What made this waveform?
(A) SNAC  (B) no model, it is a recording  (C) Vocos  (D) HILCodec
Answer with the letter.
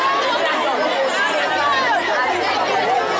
B